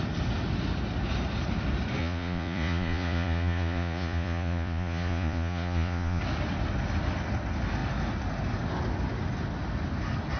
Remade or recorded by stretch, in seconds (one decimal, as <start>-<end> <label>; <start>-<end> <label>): 0.0-2.0 recorded; 2.0-6.2 remade; 6.2-10.4 recorded